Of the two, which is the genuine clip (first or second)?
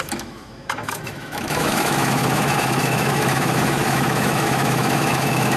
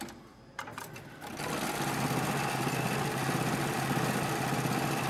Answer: second